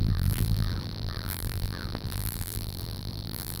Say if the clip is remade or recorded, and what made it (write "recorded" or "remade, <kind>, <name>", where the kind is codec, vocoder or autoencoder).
remade, vocoder, BigVGAN v2